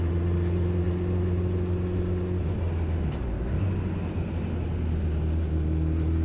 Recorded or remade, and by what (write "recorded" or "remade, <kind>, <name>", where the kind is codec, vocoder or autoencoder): recorded